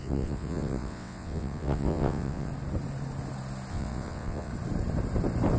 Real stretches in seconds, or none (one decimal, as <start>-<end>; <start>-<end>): 2.5-3.7; 4.5-5.6